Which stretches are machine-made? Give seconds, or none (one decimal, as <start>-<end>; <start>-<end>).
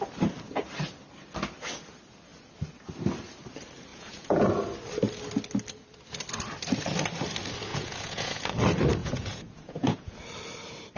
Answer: 3.9-4.5; 7.7-8.5; 9.0-10.1